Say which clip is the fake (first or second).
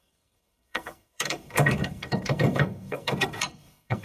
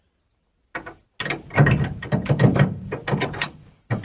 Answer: first